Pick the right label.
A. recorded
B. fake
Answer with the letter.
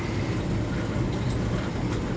A